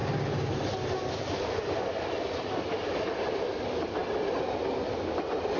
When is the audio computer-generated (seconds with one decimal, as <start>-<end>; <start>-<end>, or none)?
none